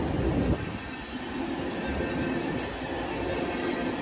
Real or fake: real